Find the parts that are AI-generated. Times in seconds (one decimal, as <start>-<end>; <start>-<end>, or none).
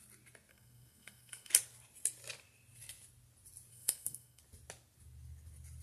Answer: 0.5-1.5; 3.7-4.4